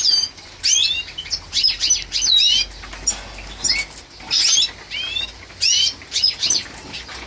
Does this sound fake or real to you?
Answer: real